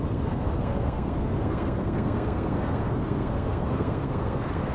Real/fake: fake